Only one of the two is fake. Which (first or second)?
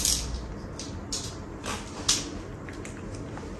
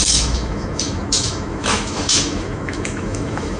second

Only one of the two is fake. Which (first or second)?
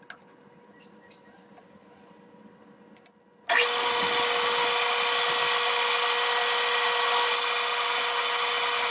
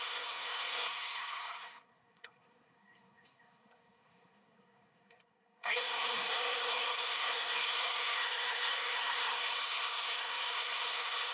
second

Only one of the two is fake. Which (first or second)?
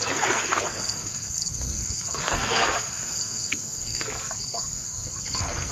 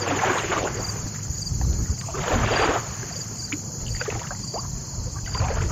first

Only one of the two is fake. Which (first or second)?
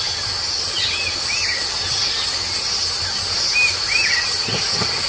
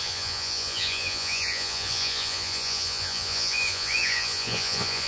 second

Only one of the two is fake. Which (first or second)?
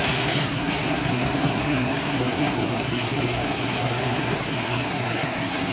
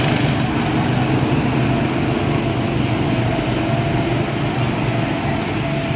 first